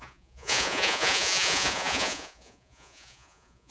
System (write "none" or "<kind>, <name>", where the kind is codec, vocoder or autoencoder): vocoder, Vocos